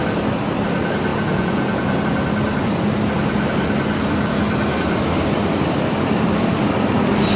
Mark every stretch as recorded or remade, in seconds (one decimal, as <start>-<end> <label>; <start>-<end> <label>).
0.0-1.1 recorded; 1.1-2.0 remade; 2.0-7.4 recorded